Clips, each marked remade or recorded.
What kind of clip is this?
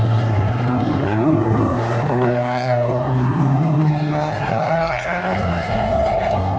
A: remade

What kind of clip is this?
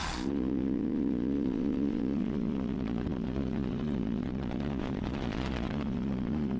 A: remade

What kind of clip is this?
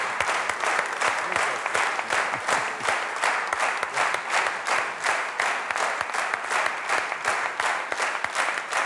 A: recorded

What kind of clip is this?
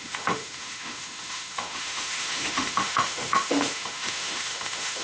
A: remade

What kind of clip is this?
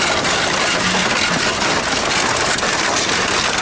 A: recorded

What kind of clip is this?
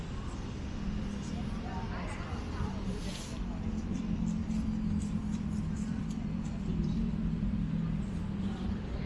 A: recorded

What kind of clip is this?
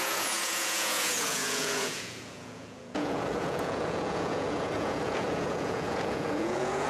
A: remade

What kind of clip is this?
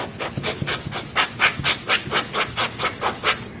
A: recorded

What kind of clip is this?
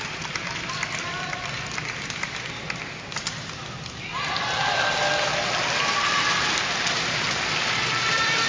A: remade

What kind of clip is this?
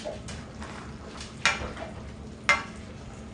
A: recorded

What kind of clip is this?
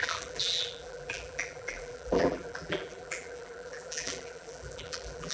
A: remade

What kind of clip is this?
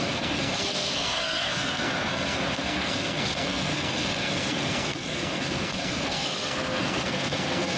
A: remade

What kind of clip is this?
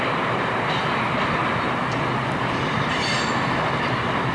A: remade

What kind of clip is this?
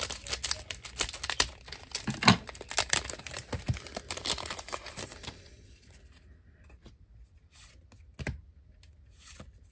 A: recorded